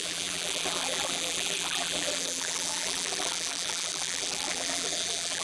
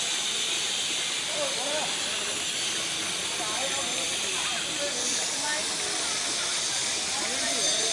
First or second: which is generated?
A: first